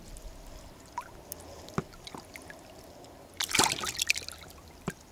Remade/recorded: recorded